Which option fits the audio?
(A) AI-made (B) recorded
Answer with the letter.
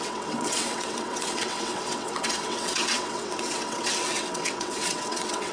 A